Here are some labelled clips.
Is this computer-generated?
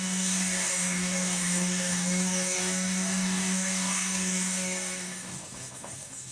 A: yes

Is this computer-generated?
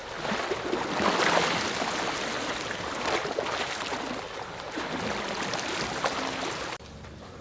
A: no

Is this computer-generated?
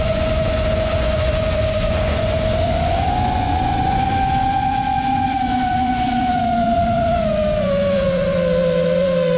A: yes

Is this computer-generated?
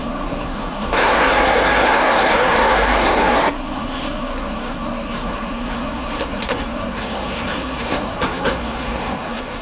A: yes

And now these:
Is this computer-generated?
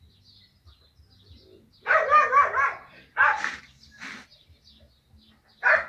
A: no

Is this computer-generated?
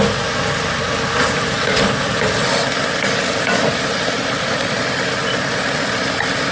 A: no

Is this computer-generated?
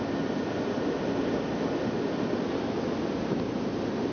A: no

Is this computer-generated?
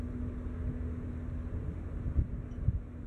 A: no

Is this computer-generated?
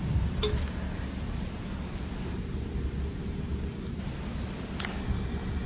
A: no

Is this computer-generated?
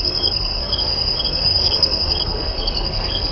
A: yes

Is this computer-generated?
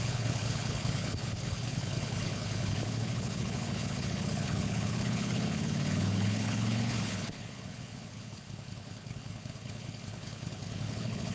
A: yes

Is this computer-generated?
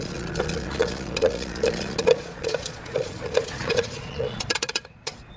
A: yes